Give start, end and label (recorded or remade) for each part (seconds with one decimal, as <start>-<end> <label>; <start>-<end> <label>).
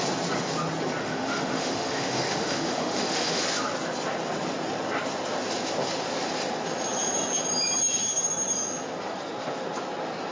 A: 0.0-1.0 recorded; 1.0-3.4 remade; 3.4-10.3 recorded